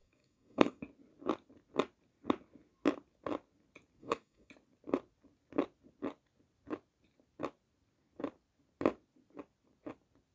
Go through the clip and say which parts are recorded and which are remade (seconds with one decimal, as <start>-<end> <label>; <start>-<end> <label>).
0.0-0.8 remade; 0.8-4.0 recorded; 4.0-4.5 remade; 4.5-10.3 recorded